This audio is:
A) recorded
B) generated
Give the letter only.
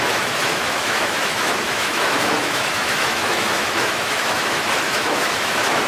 B